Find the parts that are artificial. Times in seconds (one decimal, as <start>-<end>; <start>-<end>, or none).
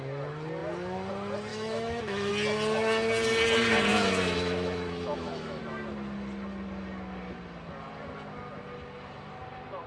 1.5-2.3; 3.9-5.6